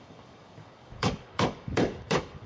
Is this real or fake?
fake